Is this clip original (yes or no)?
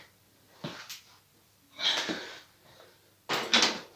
yes